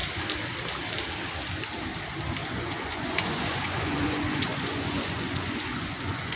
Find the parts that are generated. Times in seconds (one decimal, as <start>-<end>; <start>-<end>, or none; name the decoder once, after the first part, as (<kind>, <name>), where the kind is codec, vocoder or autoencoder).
2.4-6.4 (vocoder, Vocos)